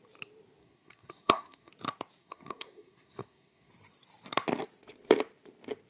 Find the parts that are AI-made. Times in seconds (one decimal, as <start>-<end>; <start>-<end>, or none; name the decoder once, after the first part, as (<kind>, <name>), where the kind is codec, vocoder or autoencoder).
0.6-1.7 (codec, SNAC); 2.2-3.7

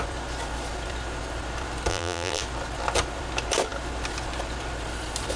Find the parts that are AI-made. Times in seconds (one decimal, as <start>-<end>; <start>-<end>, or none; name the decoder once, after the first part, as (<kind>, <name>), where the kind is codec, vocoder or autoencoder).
1.9-2.4 (vocoder, BigVGAN v2)

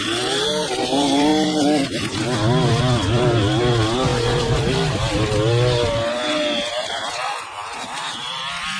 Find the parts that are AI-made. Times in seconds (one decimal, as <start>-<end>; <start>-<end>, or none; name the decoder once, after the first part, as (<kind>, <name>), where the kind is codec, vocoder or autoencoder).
none

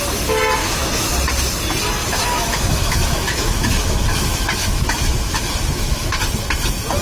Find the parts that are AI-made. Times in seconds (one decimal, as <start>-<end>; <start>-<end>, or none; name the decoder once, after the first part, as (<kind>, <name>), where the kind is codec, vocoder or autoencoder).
0.6-1.1 (autoencoder, DAC-VAE); 2.0-6.2